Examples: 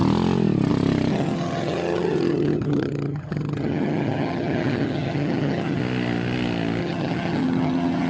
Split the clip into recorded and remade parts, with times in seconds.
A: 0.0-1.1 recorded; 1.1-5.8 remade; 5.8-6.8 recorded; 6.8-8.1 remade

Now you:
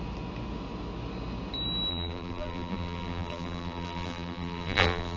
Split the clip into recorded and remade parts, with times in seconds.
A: 0.0-1.9 recorded; 1.9-5.2 remade

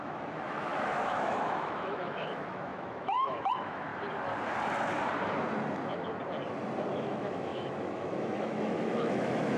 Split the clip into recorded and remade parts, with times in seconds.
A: 0.0-3.9 remade; 3.9-6.9 recorded; 6.9-9.6 remade

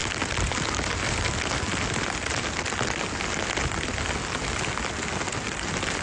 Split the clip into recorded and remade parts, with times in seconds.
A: 0.0-6.0 recorded

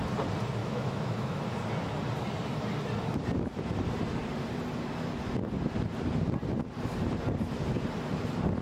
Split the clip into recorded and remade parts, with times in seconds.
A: 0.0-0.6 recorded; 0.6-1.4 remade; 1.4-8.6 recorded

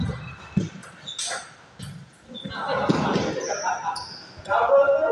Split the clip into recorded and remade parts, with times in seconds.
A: 0.0-5.1 recorded